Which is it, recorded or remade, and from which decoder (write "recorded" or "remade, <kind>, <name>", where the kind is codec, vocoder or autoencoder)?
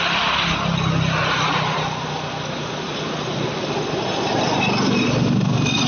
recorded